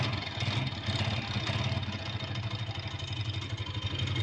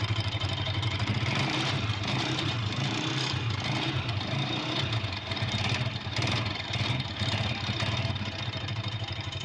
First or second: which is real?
first